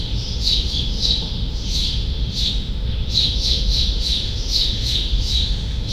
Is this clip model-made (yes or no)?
yes